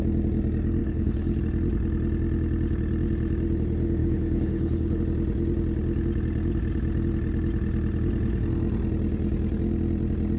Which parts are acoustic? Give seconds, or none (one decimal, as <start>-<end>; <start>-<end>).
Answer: 0.0-0.8; 1.4-4.0; 5.0-10.4